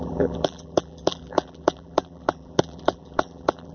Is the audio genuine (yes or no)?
no